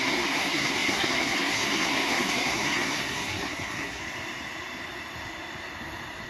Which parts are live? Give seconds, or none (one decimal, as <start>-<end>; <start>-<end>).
4.0-6.3